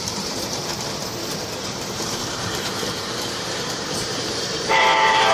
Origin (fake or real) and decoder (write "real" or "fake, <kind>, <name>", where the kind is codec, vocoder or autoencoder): fake, vocoder, BigVGAN v2